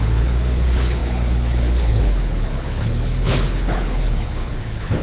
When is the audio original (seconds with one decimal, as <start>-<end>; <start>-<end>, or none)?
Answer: none